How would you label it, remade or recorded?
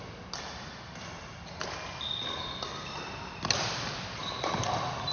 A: recorded